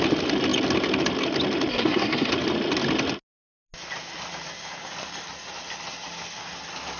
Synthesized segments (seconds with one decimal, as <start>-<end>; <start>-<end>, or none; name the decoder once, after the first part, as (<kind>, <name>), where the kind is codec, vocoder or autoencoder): 1.7-2.3 (codec, SNAC)